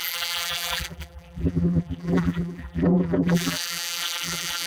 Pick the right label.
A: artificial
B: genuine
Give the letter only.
A